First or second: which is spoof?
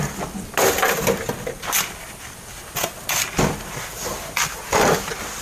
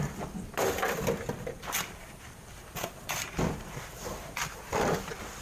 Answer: second